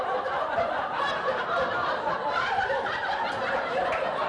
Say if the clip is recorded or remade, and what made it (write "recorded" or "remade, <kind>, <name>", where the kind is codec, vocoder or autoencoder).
remade, vocoder, BigVGAN v2